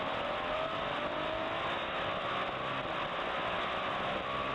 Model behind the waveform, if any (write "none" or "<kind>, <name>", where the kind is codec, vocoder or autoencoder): none